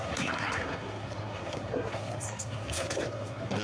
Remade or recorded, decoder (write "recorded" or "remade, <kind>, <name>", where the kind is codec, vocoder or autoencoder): remade, codec, SNAC